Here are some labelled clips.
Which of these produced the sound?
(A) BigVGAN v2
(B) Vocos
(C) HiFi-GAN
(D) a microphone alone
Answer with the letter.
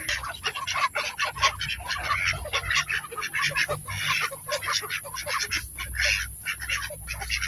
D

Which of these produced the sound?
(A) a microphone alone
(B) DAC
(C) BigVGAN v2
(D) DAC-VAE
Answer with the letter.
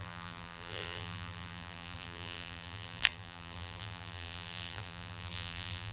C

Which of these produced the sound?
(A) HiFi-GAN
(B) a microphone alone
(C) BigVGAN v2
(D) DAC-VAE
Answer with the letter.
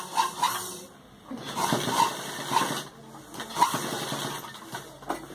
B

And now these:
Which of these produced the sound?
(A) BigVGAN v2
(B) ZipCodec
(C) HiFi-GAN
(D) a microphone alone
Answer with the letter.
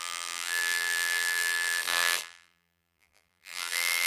A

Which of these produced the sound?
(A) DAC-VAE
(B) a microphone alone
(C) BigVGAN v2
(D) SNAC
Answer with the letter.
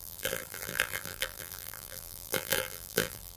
C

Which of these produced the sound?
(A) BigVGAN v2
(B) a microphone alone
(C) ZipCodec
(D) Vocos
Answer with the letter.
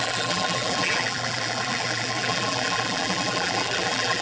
A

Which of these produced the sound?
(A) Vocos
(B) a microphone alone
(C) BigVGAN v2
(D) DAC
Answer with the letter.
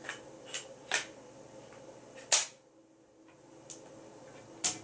B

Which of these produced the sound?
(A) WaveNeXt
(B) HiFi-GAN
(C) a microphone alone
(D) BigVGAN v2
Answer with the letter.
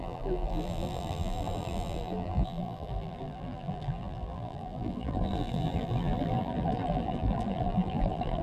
D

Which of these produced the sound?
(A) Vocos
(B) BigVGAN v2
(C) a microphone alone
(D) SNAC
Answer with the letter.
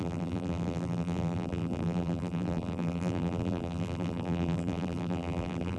B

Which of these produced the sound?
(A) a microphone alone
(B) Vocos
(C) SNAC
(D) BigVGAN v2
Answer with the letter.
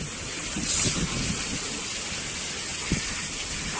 A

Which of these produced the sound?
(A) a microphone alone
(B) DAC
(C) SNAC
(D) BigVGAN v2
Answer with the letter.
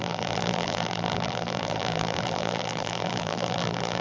D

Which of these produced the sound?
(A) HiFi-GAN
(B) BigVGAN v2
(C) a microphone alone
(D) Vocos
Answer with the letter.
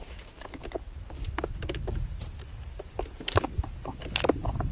B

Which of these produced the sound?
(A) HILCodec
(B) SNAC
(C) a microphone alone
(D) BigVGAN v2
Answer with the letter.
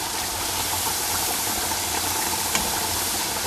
D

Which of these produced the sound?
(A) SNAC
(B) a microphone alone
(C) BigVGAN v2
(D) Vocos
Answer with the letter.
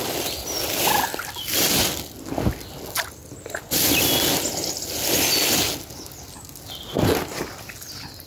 B